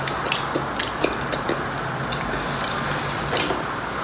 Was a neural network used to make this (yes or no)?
no